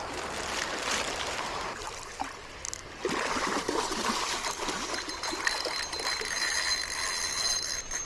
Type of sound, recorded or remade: recorded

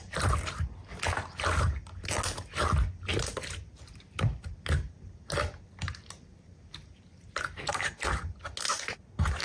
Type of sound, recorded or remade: recorded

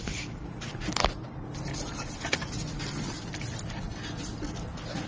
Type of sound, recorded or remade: recorded